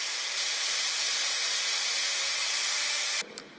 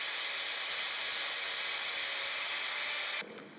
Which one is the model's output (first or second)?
first